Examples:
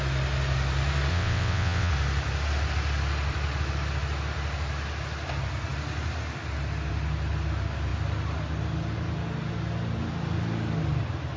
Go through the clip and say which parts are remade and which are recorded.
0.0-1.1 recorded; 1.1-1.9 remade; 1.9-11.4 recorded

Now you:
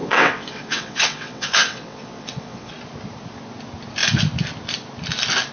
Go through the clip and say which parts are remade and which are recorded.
0.0-2.7 remade; 2.7-5.5 recorded

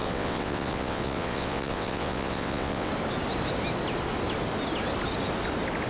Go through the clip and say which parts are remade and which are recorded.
0.0-2.9 remade; 2.9-5.9 recorded

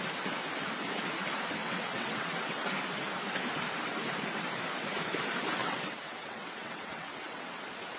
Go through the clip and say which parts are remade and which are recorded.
0.0-1.6 recorded; 1.6-2.8 remade; 2.8-5.6 recorded; 5.6-7.6 remade; 7.6-8.0 recorded

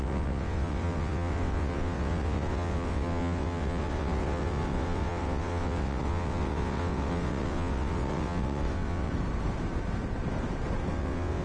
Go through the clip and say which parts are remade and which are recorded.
0.0-9.1 remade; 9.1-10.9 recorded; 10.9-11.4 remade

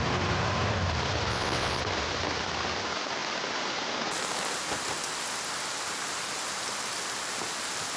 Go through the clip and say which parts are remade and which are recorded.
0.0-1.3 recorded; 1.3-1.8 remade; 1.8-8.0 recorded